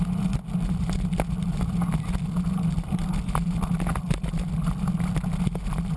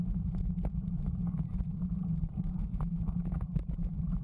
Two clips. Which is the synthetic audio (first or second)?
second